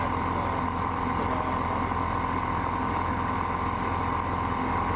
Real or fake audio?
real